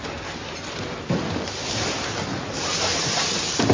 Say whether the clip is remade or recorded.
recorded